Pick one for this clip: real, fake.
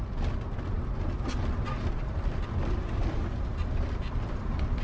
real